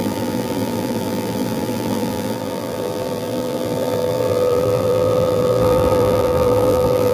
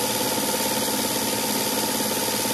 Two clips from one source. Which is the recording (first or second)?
second